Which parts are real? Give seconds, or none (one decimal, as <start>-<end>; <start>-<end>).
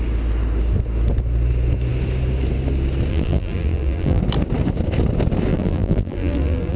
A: 0.0-3.1; 4.2-5.5